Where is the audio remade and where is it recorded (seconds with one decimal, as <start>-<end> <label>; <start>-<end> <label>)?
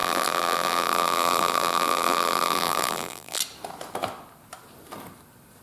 0.0-3.4 remade; 3.4-5.6 recorded